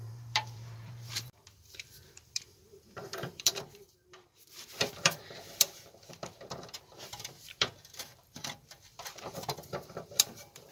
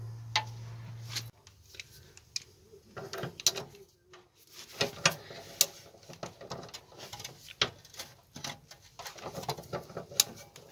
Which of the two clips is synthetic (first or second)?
first